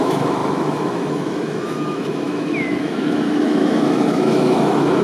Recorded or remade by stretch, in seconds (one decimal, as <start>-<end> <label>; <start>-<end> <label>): 0.0-5.0 remade